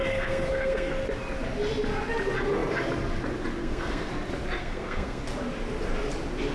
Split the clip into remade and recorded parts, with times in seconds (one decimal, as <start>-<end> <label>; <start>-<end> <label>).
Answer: 0.0-0.9 remade; 0.9-3.6 recorded; 3.6-4.1 remade; 4.1-4.6 recorded; 4.6-5.2 remade; 5.2-6.5 recorded